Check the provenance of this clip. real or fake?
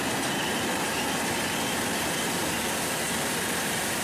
real